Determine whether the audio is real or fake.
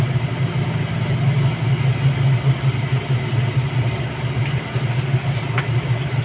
real